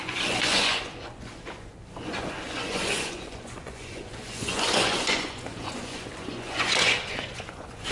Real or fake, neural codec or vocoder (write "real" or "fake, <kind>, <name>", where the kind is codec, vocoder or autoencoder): fake, vocoder, Vocos